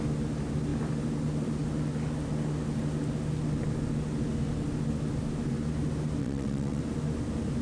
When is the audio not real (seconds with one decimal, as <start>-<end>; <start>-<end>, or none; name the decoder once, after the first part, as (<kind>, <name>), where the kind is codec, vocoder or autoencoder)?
6.2-6.8 (vocoder, WaveNeXt)